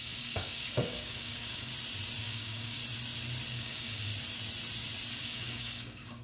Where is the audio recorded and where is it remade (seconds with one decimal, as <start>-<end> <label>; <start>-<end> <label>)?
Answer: 0.0-1.7 remade; 1.7-2.2 recorded; 2.2-2.8 remade; 2.8-3.5 recorded; 3.5-4.1 remade; 4.1-5.2 recorded; 5.2-6.2 remade